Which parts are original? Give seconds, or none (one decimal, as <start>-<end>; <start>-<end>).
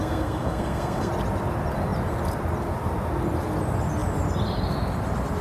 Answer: 1.1-5.4